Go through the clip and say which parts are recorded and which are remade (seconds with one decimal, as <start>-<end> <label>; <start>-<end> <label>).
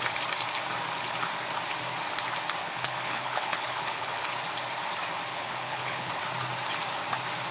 0.0-2.6 recorded; 2.6-4.3 remade; 4.3-5.3 recorded; 5.3-6.1 remade; 6.1-7.5 recorded